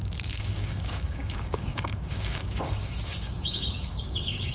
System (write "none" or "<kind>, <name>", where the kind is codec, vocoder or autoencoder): codec, DAC